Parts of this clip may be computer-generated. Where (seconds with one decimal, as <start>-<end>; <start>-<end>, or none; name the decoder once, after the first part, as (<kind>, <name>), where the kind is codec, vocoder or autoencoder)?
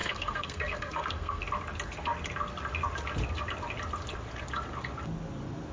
0.0-1.4 (codec, SNAC)